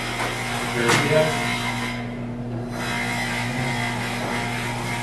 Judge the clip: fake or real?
real